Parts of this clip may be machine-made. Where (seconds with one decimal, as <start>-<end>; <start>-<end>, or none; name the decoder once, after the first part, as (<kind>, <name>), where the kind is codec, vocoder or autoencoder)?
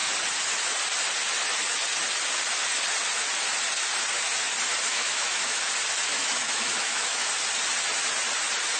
4.9-5.6 (autoencoder, DAC-VAE); 6.1-7.3